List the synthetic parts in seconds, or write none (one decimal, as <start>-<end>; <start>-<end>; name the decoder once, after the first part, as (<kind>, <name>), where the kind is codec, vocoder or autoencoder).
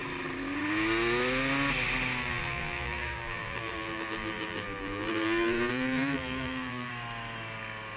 2.2-6.9 (vocoder, BigVGAN v2)